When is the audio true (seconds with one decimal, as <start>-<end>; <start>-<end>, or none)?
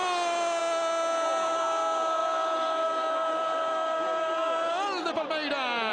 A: 0.0-5.9